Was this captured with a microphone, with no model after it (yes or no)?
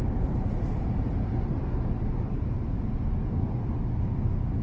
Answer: yes